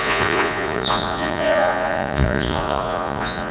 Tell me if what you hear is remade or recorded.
remade